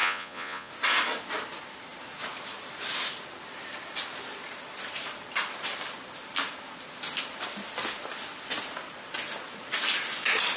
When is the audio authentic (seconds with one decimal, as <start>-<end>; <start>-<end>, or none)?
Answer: 0.7-10.6